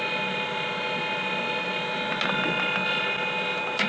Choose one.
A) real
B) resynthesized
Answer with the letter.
A